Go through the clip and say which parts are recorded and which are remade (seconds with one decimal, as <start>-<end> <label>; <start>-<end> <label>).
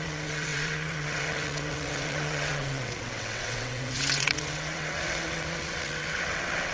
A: 0.0-6.7 remade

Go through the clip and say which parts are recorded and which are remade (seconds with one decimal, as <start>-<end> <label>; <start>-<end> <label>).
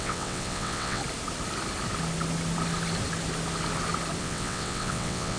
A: 0.0-1.0 remade; 1.0-4.2 recorded; 4.2-5.4 remade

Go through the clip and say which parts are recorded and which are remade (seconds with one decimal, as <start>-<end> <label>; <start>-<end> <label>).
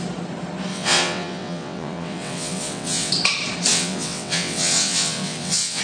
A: 0.0-0.7 recorded; 0.7-3.1 remade; 3.1-3.7 recorded; 3.7-5.8 remade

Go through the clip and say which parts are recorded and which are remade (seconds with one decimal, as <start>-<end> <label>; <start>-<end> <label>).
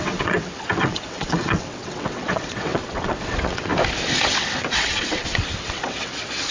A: 0.0-3.7 remade; 3.7-4.2 recorded; 4.2-6.5 remade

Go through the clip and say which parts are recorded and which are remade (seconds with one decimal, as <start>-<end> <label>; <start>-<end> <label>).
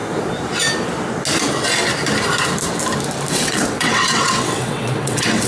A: 0.0-3.3 recorded; 3.3-5.5 remade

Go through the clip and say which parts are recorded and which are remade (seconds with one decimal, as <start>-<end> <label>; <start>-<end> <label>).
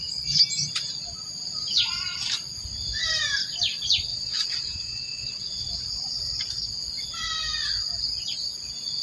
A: 0.0-4.1 recorded; 4.1-5.7 remade; 5.7-9.0 recorded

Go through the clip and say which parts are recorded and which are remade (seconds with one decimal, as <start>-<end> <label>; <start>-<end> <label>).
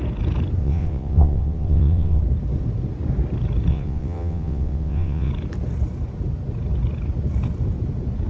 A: 0.0-0.6 recorded; 0.6-2.2 remade; 2.2-3.7 recorded; 3.7-5.3 remade; 5.3-8.3 recorded